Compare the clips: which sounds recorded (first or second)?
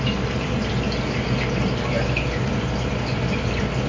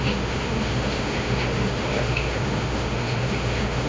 first